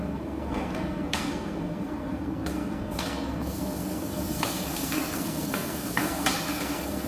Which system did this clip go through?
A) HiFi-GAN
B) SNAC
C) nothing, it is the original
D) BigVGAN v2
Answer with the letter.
B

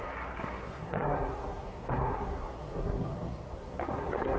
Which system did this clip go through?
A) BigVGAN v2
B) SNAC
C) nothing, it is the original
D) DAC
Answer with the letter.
B